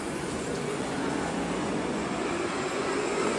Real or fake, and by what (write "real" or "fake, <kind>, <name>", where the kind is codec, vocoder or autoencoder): fake, vocoder, Vocos